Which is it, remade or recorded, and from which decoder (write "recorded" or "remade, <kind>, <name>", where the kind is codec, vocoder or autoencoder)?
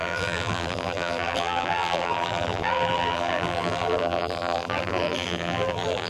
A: remade, vocoder, BigVGAN v2